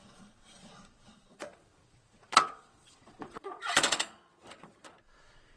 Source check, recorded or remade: remade